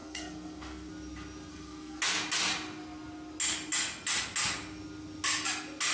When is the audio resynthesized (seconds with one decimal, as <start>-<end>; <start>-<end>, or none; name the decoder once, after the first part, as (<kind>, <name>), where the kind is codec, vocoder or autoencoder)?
0.0-0.9 (codec, SNAC); 1.5-2.0